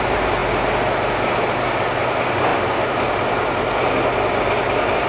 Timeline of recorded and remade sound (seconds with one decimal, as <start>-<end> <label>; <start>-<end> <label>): 0.0-5.1 recorded